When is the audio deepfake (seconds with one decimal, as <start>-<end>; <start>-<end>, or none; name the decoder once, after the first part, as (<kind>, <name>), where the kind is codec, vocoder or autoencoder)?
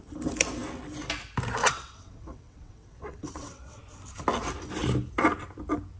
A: 1.6-3.8 (vocoder, WaveNeXt)